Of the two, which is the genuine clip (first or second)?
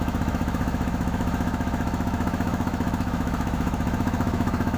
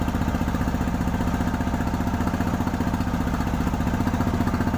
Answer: second